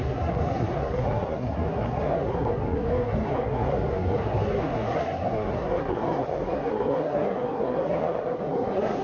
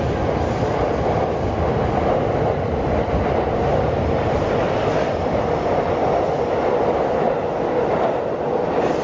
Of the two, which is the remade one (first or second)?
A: first